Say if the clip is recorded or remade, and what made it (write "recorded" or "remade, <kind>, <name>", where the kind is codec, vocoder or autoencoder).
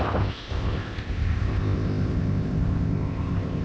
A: remade, codec, ZipCodec